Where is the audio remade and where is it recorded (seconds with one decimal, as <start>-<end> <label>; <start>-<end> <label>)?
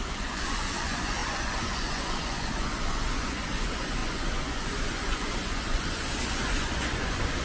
0.0-7.4 remade